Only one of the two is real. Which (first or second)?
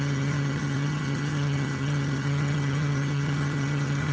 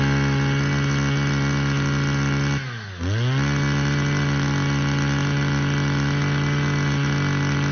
second